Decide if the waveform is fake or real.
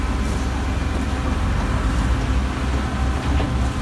real